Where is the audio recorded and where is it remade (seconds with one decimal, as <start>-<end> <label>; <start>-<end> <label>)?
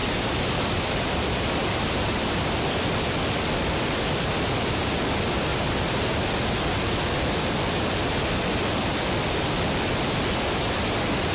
0.0-2.4 remade; 2.4-5.5 recorded; 5.5-6.3 remade; 6.3-11.3 recorded